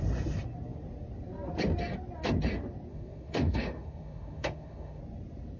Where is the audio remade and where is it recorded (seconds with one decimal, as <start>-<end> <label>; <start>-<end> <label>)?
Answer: 0.0-2.9 recorded; 2.9-5.0 remade; 5.0-5.6 recorded